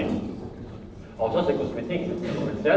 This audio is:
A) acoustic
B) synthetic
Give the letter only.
B